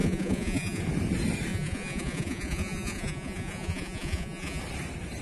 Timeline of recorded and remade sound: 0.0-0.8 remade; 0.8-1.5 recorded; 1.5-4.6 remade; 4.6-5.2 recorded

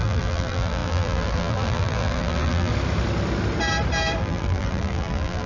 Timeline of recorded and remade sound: 0.0-2.7 remade; 2.7-4.2 recorded; 4.2-5.5 remade

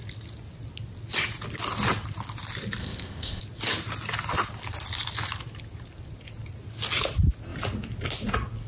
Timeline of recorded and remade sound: 0.0-2.8 recorded; 2.8-3.4 remade; 3.4-8.7 recorded

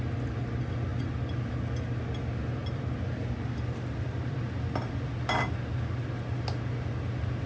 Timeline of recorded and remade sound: 0.0-7.5 recorded

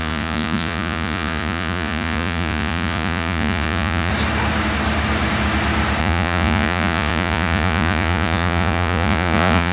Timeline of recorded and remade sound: 0.0-4.1 remade; 4.1-6.0 recorded; 6.0-9.7 remade